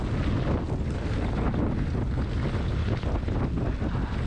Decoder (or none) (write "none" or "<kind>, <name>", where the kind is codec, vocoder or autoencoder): none